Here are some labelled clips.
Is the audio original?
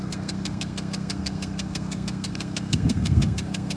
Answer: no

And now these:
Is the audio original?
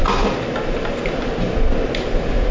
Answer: yes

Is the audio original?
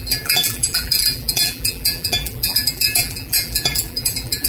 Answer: no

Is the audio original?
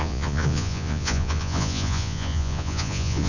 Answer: no